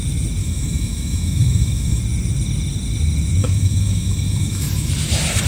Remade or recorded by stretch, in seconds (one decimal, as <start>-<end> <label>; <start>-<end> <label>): 0.0-0.4 recorded; 0.4-2.0 remade; 2.0-3.4 recorded; 3.4-4.9 remade; 4.9-5.5 recorded

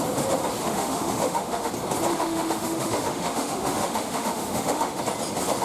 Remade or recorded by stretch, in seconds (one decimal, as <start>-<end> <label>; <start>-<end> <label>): 0.0-0.6 recorded; 0.6-1.7 remade; 1.7-2.1 recorded; 2.1-5.0 remade; 5.0-5.6 recorded

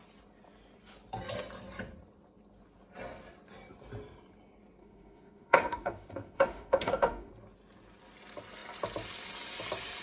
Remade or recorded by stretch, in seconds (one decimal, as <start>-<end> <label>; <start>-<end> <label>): 0.0-4.8 recorded; 4.8-7.3 remade; 7.3-10.0 recorded